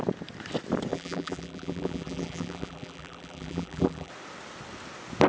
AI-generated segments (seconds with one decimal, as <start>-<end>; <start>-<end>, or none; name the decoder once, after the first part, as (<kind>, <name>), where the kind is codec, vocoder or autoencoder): 0.9-4.1 (vocoder, BigVGAN v2)